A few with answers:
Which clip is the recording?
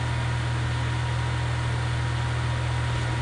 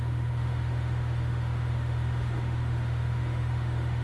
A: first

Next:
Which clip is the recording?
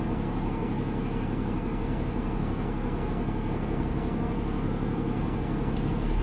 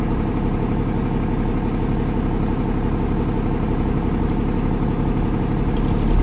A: second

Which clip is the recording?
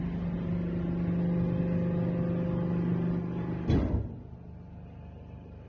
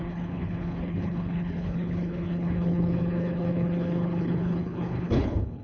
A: first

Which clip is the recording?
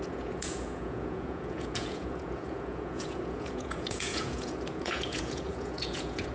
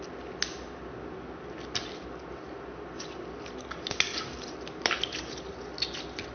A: second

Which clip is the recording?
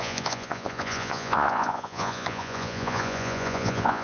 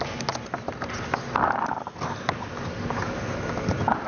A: second